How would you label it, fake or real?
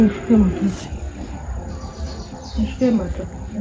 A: fake